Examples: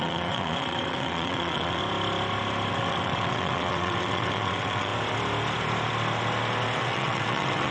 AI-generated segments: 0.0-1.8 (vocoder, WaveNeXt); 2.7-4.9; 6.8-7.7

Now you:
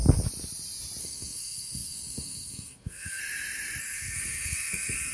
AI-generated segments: 1.0-3.2 (codec, SNAC); 3.8-5.1

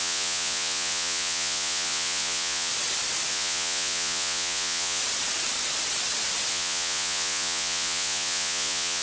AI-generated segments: 0.0-2.7 (vocoder, Vocos); 3.3-5.0; 6.5-9.0

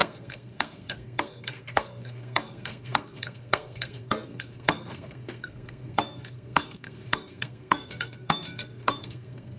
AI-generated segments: 0.0-9.6 (codec, SNAC)

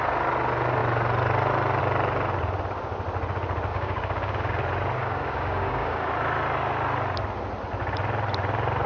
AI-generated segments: 3.7-4.6 (codec, DAC); 5.0-6.1